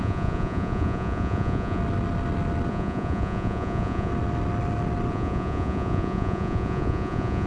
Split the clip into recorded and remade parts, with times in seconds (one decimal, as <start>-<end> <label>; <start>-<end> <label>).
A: 0.0-1.8 remade; 1.8-2.7 recorded; 2.7-4.1 remade; 4.1-5.1 recorded; 5.1-7.5 remade